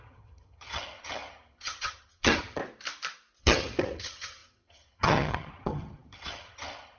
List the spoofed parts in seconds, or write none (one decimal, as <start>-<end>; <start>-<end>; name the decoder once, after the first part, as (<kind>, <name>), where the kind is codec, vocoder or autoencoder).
0.0-2.6 (vocoder, HiFi-GAN); 3.4-7.0